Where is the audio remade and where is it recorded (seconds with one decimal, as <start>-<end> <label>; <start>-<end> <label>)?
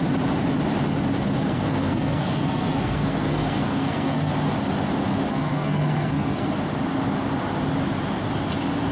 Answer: 0.0-1.4 recorded; 1.4-4.3 remade; 4.3-5.3 recorded; 5.3-6.5 remade; 6.5-8.9 recorded